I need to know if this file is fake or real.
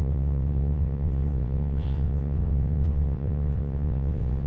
fake